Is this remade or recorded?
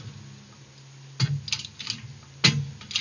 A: recorded